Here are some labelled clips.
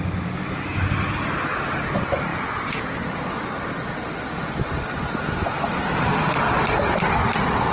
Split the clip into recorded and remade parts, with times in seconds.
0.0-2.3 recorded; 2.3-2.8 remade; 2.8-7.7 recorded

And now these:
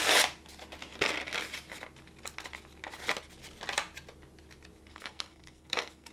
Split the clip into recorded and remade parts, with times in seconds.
0.0-4.9 recorded; 4.9-6.1 remade